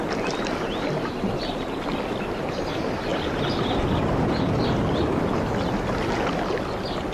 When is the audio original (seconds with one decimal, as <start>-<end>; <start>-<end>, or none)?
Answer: 0.0-3.1; 3.6-7.1